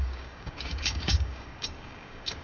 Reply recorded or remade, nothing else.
remade